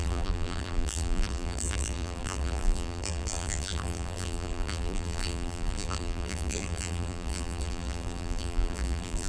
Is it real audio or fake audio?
fake